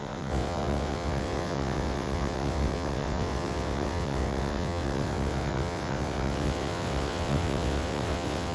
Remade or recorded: remade